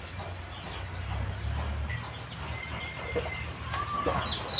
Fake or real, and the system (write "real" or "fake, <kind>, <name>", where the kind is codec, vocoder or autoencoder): real